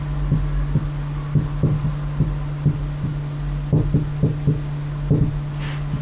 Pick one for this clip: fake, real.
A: real